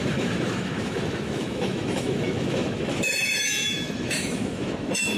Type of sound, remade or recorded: remade